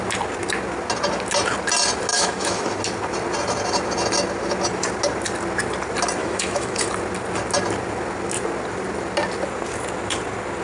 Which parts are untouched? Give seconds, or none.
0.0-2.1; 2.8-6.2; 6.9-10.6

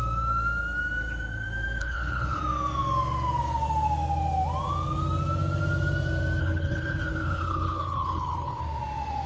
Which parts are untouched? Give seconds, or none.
0.0-1.8; 2.4-6.4; 8.6-9.3

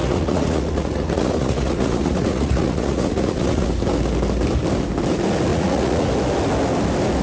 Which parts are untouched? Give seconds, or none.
3.7-5.5; 6.1-7.2

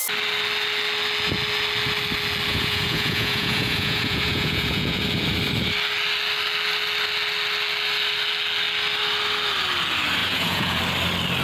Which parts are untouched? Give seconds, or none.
0.0-2.5; 5.0-10.2; 10.8-11.4

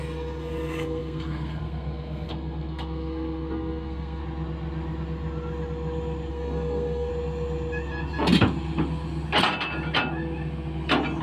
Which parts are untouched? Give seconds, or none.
4.2-6.3; 7.1-11.2

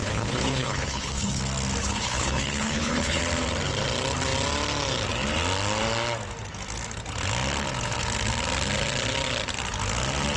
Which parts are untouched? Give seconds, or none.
1.4-1.8; 3.2-10.4

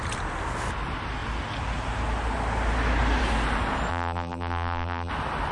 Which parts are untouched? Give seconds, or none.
0.0-3.9; 5.1-5.5

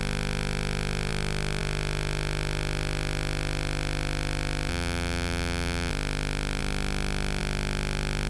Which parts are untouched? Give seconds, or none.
0.0-4.7; 5.9-8.3